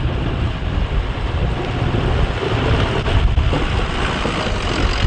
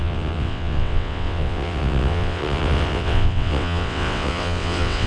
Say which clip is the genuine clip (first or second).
first